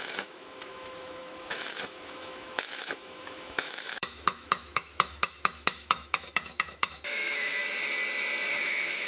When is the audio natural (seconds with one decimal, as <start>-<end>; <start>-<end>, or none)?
7.6-8.6